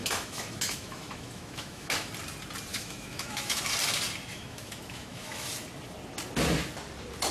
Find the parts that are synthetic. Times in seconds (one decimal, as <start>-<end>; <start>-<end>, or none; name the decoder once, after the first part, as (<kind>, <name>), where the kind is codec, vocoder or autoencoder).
0.0-2.1 (autoencoder, DAC-VAE); 2.7-3.6; 4.3-5.5